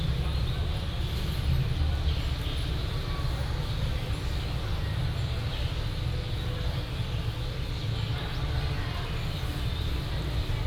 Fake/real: real